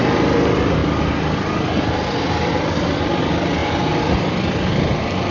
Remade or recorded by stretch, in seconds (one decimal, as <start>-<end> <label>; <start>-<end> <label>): 0.0-5.3 recorded